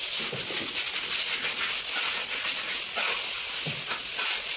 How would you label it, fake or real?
real